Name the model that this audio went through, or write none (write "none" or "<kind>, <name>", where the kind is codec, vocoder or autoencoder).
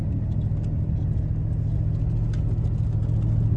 none